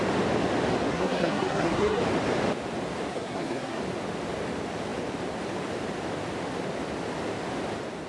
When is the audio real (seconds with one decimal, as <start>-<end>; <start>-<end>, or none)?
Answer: 0.0-0.9; 2.0-3.1; 3.8-8.1